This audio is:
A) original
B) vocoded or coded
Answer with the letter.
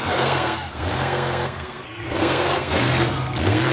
B